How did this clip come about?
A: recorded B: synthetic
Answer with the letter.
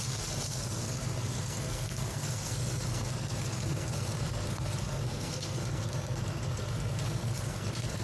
B